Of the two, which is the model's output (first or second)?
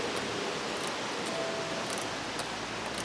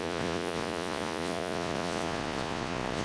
second